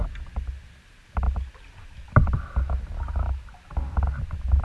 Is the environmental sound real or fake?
real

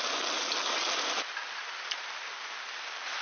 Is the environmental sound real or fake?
real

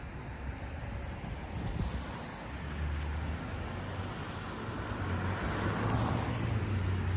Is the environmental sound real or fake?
real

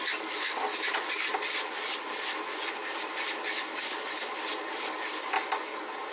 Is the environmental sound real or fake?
real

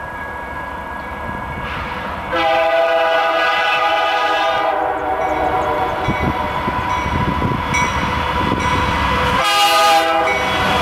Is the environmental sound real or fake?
real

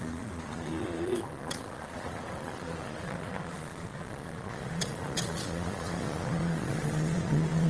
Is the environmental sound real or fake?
fake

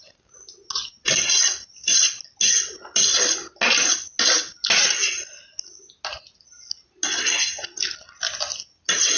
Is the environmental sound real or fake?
real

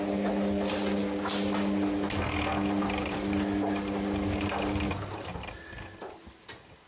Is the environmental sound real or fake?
real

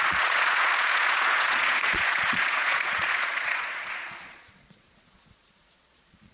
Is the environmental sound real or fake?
fake